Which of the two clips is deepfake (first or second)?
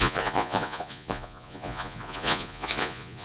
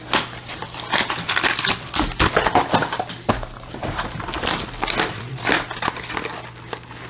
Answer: first